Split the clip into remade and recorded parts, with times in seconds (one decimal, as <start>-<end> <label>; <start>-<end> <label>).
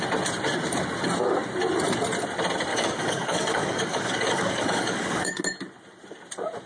0.0-2.7 recorded; 2.7-5.4 remade; 5.4-6.7 recorded